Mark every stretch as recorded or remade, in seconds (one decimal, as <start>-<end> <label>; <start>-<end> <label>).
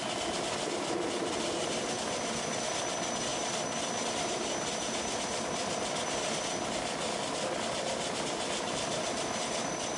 0.0-10.0 recorded